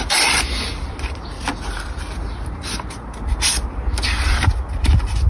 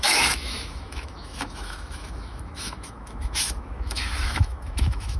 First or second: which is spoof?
second